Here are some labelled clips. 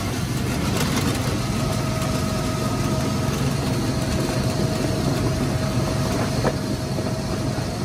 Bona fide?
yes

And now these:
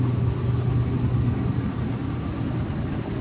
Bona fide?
yes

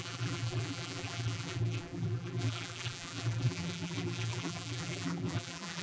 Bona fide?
no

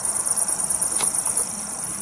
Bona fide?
no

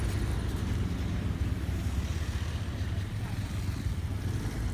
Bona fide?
yes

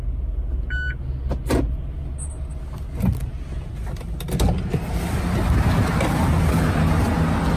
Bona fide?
yes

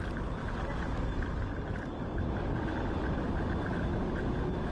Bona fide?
yes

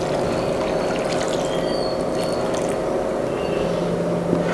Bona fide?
yes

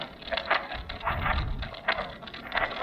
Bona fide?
yes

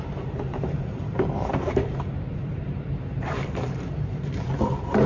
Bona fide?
no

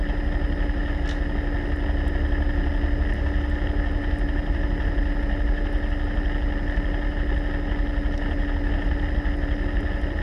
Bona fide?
yes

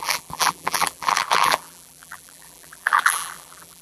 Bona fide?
no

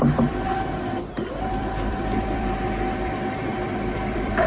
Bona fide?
no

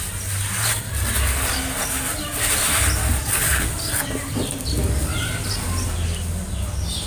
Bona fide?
yes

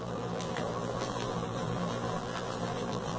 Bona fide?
no